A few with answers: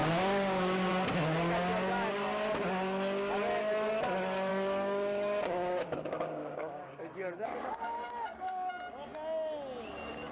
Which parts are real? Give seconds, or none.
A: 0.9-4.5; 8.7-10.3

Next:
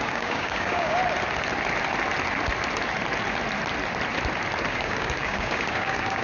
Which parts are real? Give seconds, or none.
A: 1.0-4.7

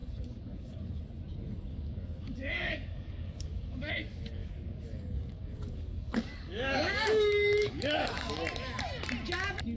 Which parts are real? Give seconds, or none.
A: 1.0-1.7; 3.9-4.4; 8.3-9.8